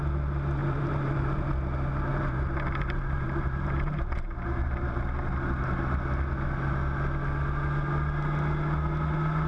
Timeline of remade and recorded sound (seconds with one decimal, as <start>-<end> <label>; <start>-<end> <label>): 0.0-0.6 recorded; 0.6-1.5 remade; 1.5-2.1 recorded; 2.1-5.0 remade; 5.0-9.5 recorded